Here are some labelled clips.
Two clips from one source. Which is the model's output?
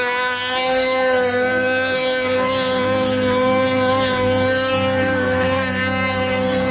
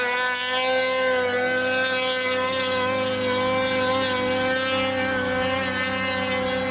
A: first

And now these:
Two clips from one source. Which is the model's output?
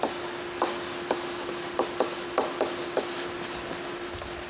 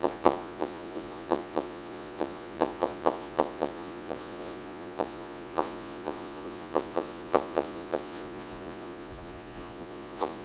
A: second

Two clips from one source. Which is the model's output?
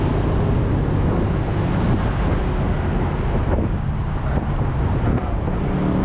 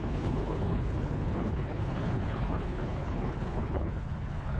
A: second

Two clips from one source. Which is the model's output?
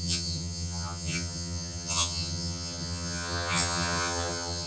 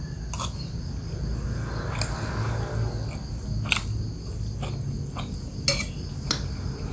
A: first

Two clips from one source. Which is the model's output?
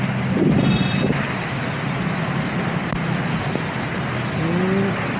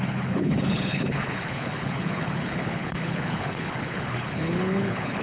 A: second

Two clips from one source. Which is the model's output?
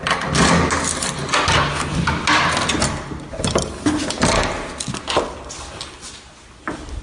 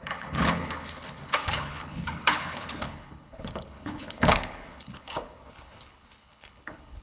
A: second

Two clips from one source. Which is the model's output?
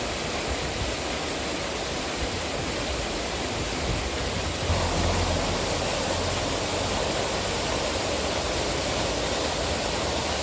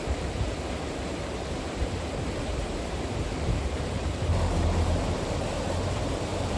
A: second